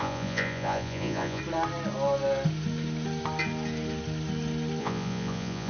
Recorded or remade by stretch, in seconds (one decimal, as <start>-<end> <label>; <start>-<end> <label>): 0.0-1.4 remade; 1.4-4.8 recorded; 4.8-5.7 remade